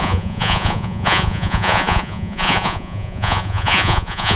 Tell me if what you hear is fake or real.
fake